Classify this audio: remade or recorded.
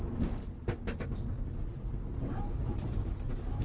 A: recorded